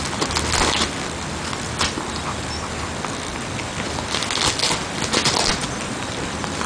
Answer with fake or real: real